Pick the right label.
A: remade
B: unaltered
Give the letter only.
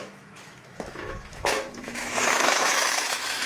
A